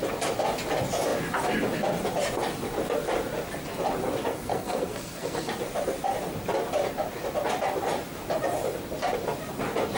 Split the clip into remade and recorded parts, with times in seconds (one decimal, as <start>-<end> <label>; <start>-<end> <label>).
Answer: 0.0-4.2 recorded; 4.2-5.5 remade; 5.5-10.0 recorded